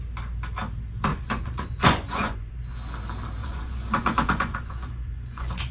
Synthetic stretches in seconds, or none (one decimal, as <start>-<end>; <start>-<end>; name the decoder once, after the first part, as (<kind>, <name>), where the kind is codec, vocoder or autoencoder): 1.1-2.5 (vocoder, Vocos); 3.4-5.7